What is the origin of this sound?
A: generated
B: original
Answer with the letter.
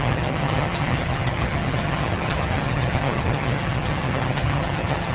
A